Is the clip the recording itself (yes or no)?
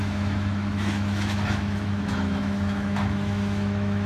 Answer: no